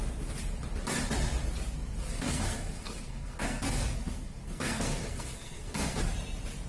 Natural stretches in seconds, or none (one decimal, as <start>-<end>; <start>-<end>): 0.0-2.0; 6.0-6.7

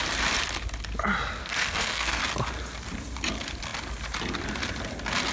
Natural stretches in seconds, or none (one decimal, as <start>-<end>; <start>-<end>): 0.0-1.4; 2.2-5.3

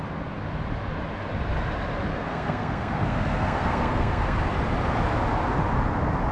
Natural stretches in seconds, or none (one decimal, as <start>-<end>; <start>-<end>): 0.0-2.1; 4.4-6.3

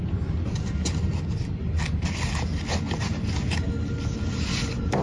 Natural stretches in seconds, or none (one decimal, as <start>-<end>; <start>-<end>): 0.0-5.0

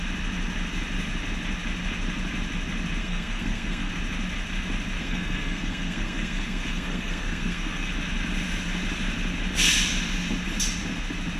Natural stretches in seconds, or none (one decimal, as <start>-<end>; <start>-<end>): 0.0-3.0; 3.9-5.0; 7.9-11.4

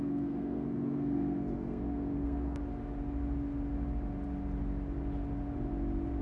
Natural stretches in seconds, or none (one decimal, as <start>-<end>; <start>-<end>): 2.6-6.2

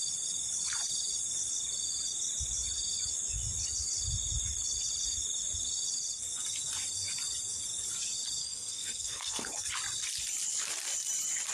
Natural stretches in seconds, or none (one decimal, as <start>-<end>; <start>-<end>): 0.0-8.4; 9.7-11.5